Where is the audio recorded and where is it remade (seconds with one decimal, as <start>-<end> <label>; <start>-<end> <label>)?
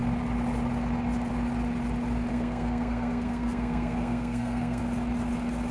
0.0-2.3 recorded; 2.3-4.8 remade; 4.8-5.7 recorded